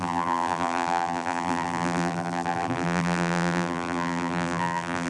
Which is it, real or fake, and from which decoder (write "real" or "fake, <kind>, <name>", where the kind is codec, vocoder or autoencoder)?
fake, vocoder, BigVGAN v2